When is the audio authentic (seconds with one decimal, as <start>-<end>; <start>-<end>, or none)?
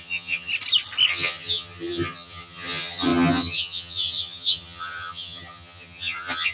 0.5-1.1